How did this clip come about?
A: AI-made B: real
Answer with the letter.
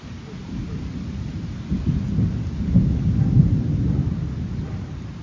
B